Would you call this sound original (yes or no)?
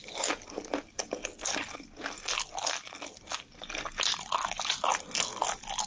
yes